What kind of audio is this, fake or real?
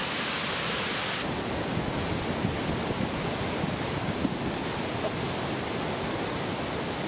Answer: real